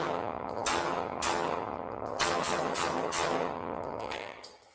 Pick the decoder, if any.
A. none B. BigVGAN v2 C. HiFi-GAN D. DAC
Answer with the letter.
C